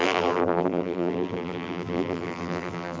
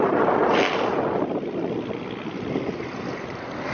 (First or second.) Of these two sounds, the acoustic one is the second